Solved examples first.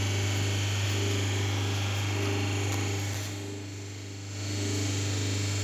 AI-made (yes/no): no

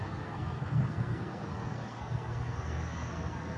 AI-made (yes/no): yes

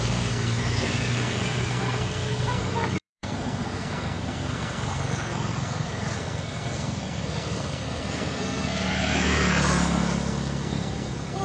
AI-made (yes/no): yes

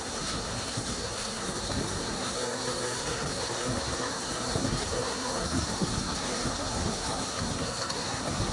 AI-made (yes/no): yes